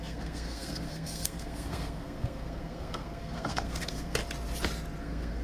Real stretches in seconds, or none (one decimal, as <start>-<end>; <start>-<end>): 4.2-5.0